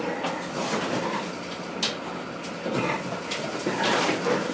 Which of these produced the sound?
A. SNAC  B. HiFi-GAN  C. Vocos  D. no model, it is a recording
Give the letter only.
D